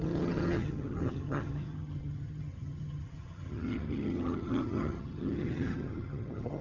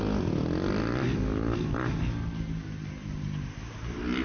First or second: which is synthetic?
first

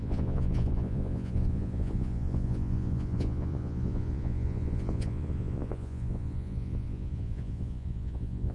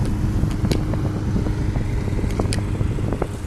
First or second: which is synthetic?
first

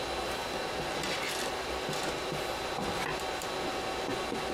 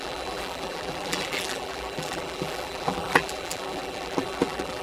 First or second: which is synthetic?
second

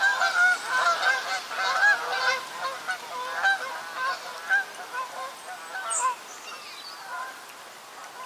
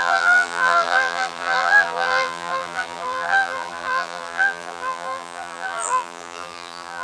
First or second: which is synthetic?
second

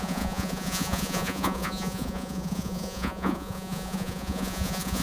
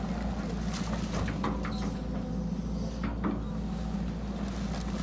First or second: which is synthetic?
first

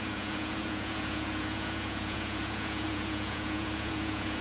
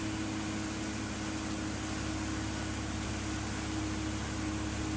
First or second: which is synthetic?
first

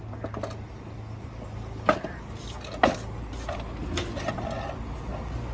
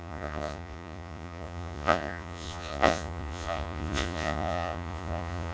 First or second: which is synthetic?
second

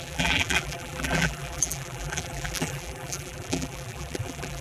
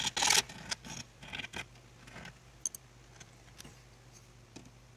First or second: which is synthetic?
first